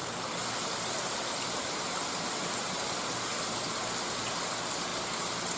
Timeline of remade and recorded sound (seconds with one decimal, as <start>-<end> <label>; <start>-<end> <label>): 0.0-2.9 remade; 2.9-5.6 recorded

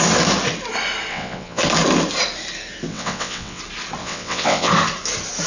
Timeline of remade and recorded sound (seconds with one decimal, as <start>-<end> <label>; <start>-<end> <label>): 0.0-1.1 recorded; 1.1-1.6 remade; 1.6-2.9 recorded; 2.9-3.6 remade; 3.6-4.0 recorded; 4.0-4.7 remade; 4.7-5.5 recorded